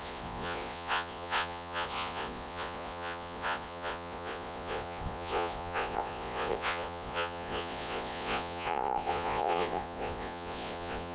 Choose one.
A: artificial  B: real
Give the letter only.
A